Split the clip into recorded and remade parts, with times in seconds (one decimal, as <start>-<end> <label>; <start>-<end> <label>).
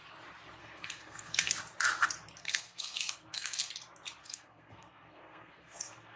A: 0.0-0.6 recorded; 0.6-1.5 remade; 1.5-2.4 recorded; 2.4-3.7 remade; 3.7-4.2 recorded; 4.2-6.2 remade